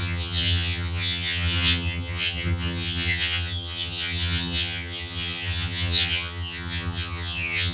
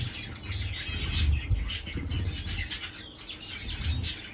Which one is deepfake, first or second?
first